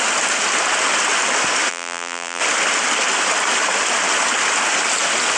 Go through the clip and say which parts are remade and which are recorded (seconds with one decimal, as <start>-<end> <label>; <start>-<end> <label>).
0.0-1.7 recorded; 1.7-2.4 remade; 2.4-5.4 recorded